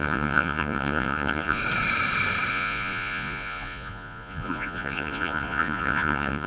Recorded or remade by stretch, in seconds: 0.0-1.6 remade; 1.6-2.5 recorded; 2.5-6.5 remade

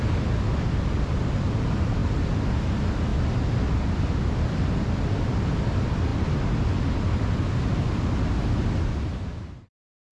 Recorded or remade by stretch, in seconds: 0.0-10.1 recorded

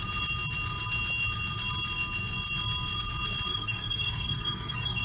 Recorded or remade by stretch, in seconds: 0.0-3.5 recorded; 3.5-5.0 remade

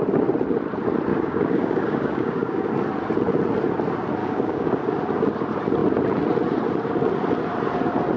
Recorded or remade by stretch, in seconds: 0.0-1.1 recorded; 1.1-2.7 remade; 2.7-4.2 recorded; 4.2-4.8 remade; 4.8-8.2 recorded